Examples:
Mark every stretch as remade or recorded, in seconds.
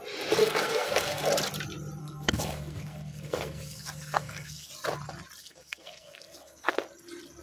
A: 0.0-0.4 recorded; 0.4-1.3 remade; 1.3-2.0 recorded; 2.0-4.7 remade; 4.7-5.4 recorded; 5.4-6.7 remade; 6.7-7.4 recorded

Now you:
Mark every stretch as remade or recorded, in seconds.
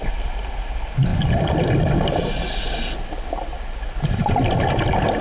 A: 0.0-5.2 recorded